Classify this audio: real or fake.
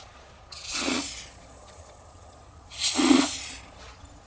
fake